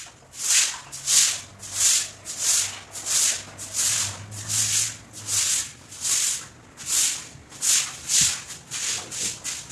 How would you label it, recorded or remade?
recorded